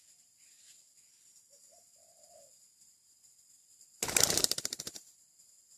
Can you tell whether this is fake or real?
real